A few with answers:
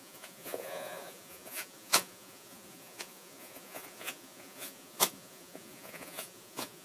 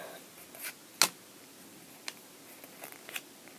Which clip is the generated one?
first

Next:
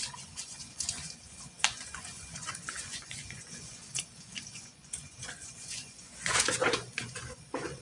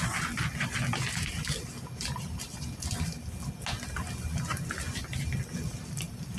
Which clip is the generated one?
first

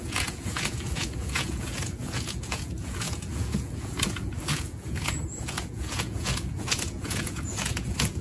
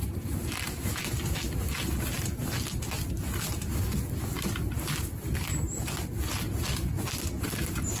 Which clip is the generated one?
first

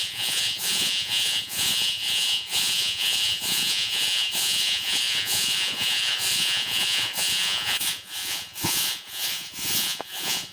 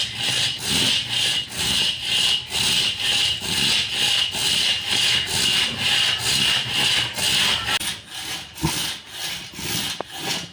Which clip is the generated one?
first